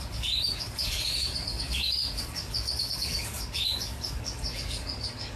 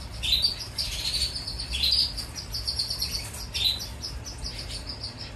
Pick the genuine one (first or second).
second